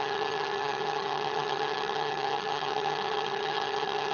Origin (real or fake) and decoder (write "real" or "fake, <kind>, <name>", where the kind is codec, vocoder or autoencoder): fake, vocoder, HiFi-GAN